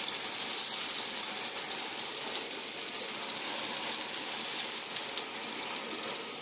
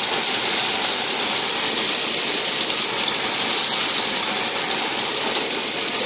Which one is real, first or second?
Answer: first